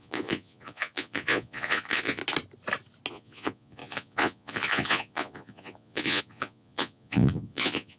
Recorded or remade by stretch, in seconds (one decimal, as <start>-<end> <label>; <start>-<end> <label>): 0.0-2.2 remade; 2.2-3.1 recorded; 3.1-8.0 remade